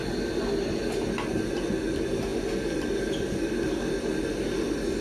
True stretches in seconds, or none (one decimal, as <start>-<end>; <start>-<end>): 0.0-5.0